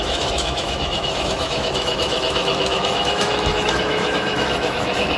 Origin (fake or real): fake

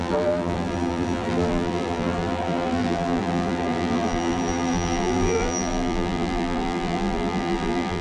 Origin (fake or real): fake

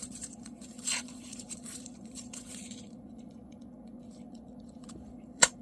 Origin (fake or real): fake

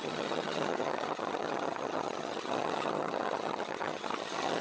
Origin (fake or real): fake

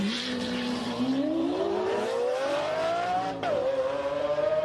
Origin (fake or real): fake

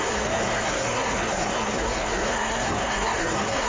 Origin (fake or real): fake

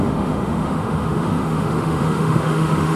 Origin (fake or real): fake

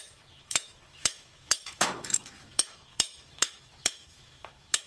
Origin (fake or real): fake